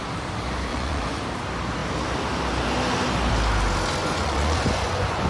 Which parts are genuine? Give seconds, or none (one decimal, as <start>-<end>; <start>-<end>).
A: 0.0-0.7; 1.2-4.0